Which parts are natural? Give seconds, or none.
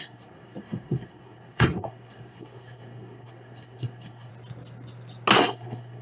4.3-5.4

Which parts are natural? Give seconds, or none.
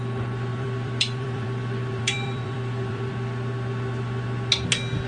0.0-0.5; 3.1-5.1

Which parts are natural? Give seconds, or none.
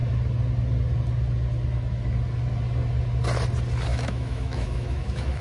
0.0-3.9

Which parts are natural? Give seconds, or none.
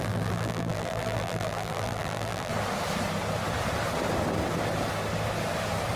2.5-6.0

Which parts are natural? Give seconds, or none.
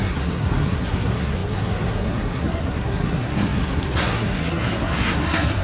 none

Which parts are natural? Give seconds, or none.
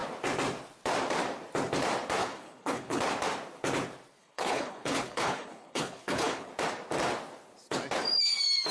0.0-2.2; 3.0-4.2; 6.5-8.7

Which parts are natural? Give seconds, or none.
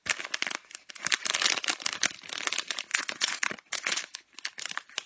0.0-2.9; 4.0-5.1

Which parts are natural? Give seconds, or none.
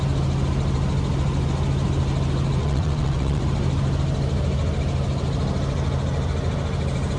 0.0-2.6; 3.4-7.2